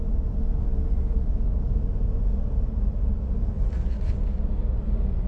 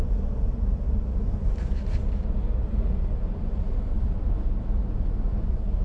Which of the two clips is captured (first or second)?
first